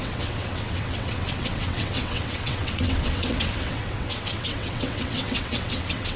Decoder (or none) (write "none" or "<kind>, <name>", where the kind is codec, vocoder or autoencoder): vocoder, WaveNeXt